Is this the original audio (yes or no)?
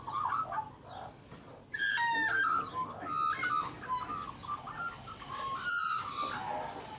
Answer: yes